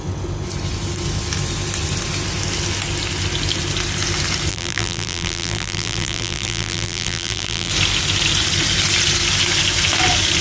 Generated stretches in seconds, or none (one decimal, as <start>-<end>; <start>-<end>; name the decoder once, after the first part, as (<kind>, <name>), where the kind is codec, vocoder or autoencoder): 4.5-7.7 (vocoder, BigVGAN v2)